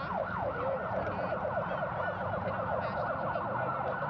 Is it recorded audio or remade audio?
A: recorded